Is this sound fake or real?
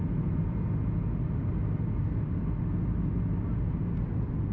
real